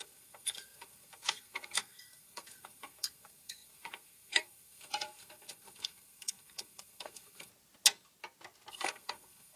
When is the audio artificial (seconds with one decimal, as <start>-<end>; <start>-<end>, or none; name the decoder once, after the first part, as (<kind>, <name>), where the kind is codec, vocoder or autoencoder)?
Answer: 0.0-7.5 (codec, SNAC); 8.7-9.6